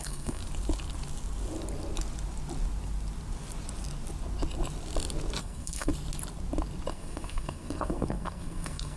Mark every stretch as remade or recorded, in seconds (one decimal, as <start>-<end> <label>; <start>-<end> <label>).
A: 0.0-0.4 remade; 0.4-5.4 recorded; 5.4-5.9 remade; 5.9-6.9 recorded; 6.9-9.0 remade

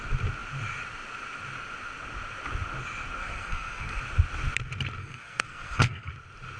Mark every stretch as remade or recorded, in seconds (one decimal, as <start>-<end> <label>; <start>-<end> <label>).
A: 0.0-3.2 recorded; 3.2-4.0 remade; 4.0-5.0 recorded; 5.0-6.1 remade; 6.1-6.6 recorded

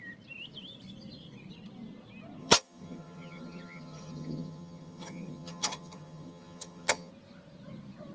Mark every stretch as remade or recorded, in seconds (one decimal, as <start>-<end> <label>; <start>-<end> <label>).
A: 0.0-2.4 recorded; 2.4-7.1 remade; 7.1-8.1 recorded